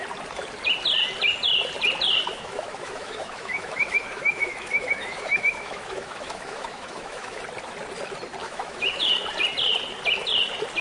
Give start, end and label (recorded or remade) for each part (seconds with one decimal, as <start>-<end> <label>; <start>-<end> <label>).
0.0-2.3 recorded; 2.3-7.4 remade; 7.4-8.4 recorded; 8.4-9.1 remade; 9.1-10.8 recorded